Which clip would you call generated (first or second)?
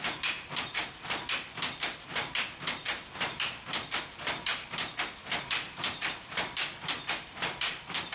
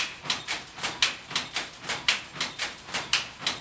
first